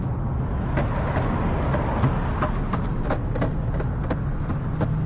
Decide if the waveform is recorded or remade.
recorded